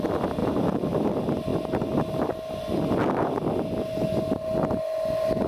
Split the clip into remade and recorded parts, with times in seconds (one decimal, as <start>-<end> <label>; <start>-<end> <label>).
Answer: 0.0-0.4 recorded; 0.4-1.1 remade; 1.1-5.5 recorded